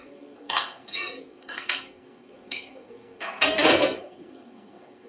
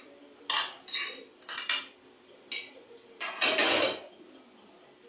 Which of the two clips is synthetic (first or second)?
first